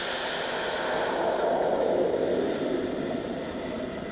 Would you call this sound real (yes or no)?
yes